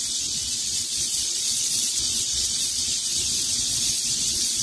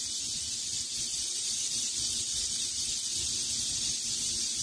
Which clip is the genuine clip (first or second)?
second